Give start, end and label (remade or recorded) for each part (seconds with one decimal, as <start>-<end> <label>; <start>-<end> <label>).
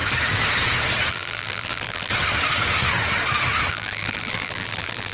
0.0-1.1 recorded; 1.1-2.1 remade; 2.1-3.7 recorded; 3.7-5.1 remade